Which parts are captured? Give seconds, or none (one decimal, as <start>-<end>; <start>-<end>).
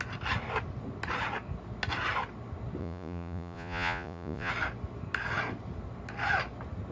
0.0-2.8; 4.5-6.9